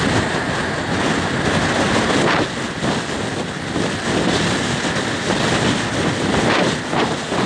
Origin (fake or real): real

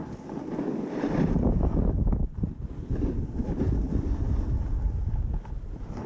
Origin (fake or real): real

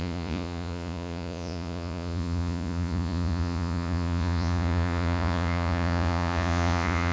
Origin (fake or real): fake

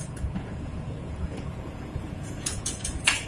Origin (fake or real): fake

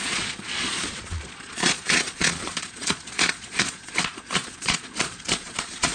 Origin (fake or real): fake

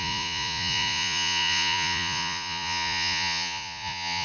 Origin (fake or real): fake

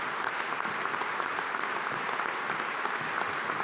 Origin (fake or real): real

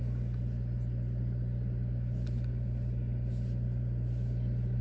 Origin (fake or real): real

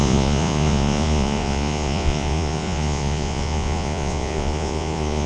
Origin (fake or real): fake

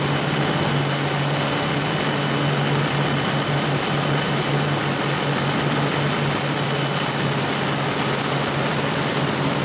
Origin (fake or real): real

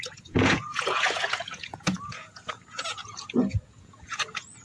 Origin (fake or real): fake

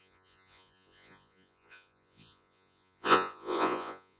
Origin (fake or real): fake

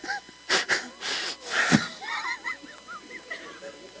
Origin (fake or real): real